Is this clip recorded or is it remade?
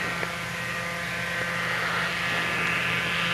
recorded